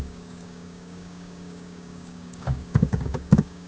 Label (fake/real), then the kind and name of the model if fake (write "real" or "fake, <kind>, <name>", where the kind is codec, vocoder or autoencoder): fake, codec, DAC